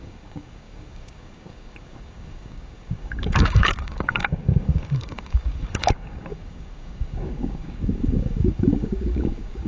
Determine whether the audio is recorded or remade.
remade